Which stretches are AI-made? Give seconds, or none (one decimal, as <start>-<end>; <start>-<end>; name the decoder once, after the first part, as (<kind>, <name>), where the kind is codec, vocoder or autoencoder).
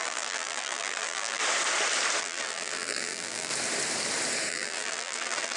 0.0-1.4 (vocoder, BigVGAN v2); 2.2-3.5; 4.5-5.6